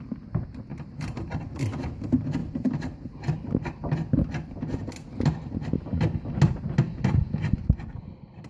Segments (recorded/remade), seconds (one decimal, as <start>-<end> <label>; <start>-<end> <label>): 0.0-0.7 recorded; 0.7-1.4 remade; 1.4-2.4 recorded; 2.4-3.9 remade; 3.9-8.5 recorded